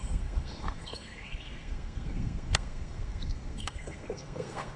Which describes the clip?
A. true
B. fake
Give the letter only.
B